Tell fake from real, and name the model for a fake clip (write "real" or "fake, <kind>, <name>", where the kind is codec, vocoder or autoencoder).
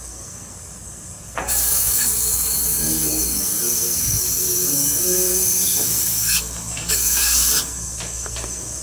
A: fake, codec, SNAC